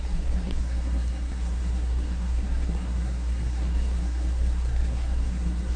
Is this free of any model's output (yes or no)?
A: no